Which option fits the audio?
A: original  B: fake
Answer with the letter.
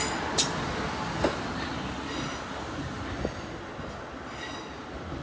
A